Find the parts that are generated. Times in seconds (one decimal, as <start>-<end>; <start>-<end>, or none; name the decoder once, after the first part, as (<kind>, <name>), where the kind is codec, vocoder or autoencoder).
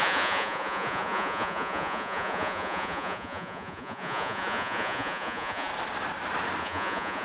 0.0-5.7 (vocoder, Vocos); 6.6-7.2